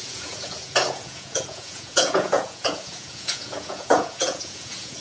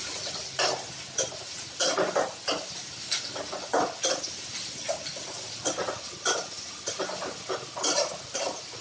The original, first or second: second